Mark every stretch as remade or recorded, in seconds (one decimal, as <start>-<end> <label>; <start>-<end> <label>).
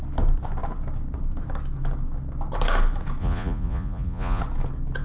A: 0.0-3.2 recorded; 3.2-4.4 remade; 4.4-5.0 recorded